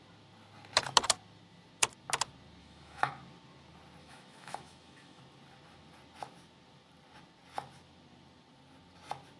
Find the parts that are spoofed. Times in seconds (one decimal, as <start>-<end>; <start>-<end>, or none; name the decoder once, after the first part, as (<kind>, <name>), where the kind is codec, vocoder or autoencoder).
2.6-3.1 (autoencoder, DAC-VAE); 4.0-5.2